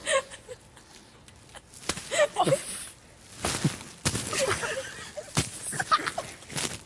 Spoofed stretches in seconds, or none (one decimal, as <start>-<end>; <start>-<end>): 0.0-0.5